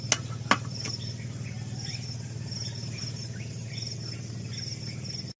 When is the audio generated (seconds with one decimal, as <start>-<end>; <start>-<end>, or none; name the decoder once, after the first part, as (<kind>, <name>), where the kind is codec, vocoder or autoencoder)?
none